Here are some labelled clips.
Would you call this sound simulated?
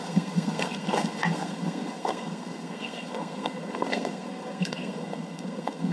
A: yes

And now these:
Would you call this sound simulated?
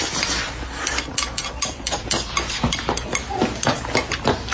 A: no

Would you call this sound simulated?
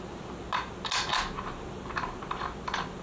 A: no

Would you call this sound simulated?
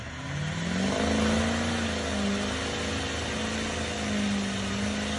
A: no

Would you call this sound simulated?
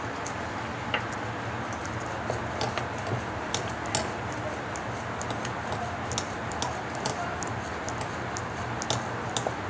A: no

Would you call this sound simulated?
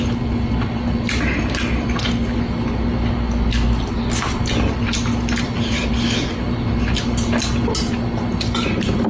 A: no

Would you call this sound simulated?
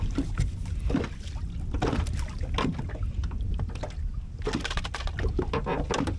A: no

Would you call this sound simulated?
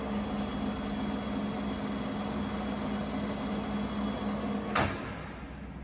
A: no